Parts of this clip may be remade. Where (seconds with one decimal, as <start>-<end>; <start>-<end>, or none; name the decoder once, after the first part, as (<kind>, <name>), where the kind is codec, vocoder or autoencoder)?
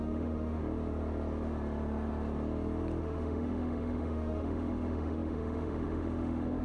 0.0-0.6 (autoencoder, DAC-VAE); 3.0-6.6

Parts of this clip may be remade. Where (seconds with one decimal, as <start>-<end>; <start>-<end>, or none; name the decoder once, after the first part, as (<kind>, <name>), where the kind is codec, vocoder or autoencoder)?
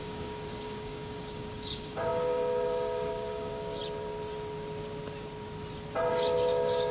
0.0-3.8 (codec, DAC); 6.1-6.9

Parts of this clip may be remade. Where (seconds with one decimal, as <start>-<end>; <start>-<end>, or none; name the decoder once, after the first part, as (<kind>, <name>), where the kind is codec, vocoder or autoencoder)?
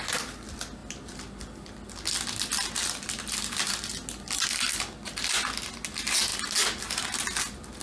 none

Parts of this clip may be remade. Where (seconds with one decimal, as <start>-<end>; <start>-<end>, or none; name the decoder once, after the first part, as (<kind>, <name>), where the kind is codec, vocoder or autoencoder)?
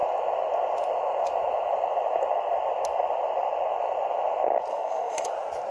4.7-5.3 (autoencoder, DAC-VAE)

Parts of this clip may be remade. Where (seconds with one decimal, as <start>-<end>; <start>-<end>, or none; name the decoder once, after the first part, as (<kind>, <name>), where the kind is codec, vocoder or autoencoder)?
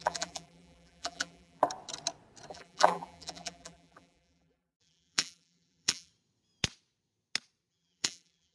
0.0-1.6 (vocoder, BigVGAN v2); 2.5-6.1; 7.7-8.5